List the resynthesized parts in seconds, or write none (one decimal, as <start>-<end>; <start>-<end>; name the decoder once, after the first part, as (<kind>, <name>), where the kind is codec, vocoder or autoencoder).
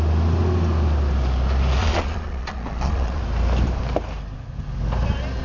1.8-3.2 (vocoder, Vocos)